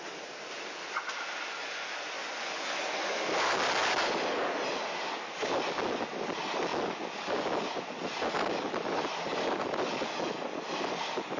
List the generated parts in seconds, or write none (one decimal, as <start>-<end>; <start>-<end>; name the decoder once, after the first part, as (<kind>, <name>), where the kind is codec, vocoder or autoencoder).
1.6-3.2 (vocoder, Vocos)